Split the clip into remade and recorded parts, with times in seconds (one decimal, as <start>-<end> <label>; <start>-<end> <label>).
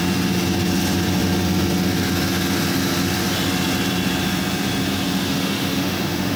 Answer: 0.0-5.3 recorded; 5.3-6.4 remade